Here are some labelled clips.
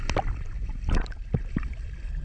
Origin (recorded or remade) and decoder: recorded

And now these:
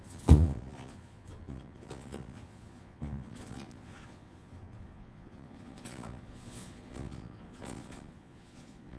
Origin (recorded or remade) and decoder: remade, vocoder, Vocos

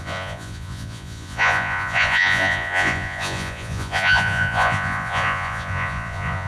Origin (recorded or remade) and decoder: remade, vocoder, Vocos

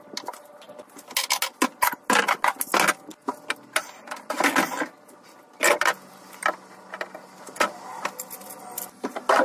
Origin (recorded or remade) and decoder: recorded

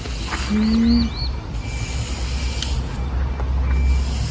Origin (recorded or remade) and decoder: recorded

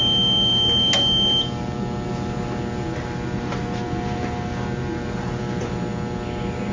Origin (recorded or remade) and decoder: recorded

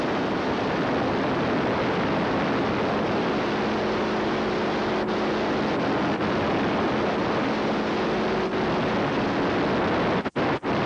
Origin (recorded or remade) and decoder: recorded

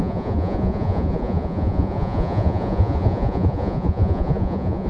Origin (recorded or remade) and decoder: remade, vocoder, Vocos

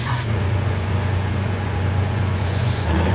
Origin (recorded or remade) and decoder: remade, vocoder, Vocos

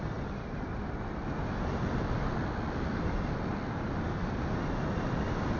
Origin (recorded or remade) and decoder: recorded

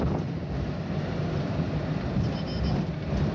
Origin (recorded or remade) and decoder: recorded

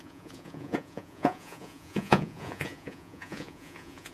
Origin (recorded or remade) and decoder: remade, vocoder, Vocos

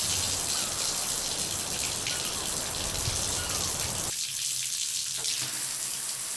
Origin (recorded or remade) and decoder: recorded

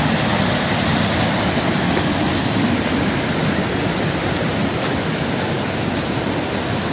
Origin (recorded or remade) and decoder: recorded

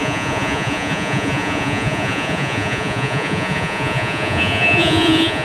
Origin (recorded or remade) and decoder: remade, vocoder, Vocos